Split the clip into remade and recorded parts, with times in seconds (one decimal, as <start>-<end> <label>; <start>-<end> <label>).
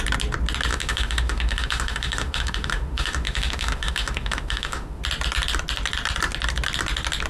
0.0-0.7 recorded; 0.7-5.0 remade; 5.0-7.3 recorded